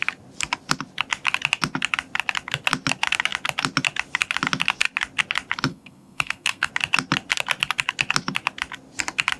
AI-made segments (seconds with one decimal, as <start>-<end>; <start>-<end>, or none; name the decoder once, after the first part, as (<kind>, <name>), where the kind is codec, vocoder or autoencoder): 5.7-6.7 (codec, SNAC)